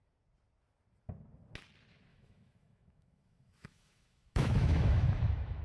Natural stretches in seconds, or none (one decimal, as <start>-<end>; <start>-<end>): 0.0-2.1

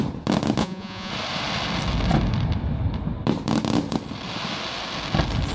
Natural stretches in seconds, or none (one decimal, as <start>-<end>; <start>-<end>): 0.0-0.6; 1.1-5.5

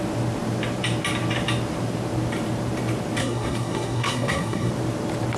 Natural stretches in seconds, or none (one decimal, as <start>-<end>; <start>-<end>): 0.0-3.2; 4.7-5.4

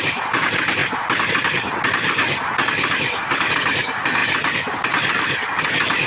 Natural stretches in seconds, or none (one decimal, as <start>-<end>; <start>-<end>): 0.8-2.9

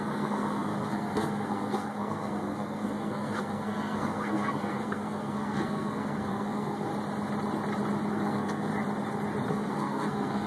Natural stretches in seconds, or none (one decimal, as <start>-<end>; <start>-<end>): 6.9-8.1; 8.7-9.5

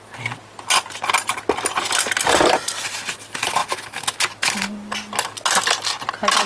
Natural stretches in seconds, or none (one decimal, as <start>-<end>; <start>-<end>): 0.0-6.5

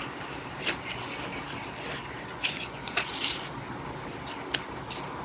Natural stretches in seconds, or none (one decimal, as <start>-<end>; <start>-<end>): 0.0-2.3; 3.1-5.2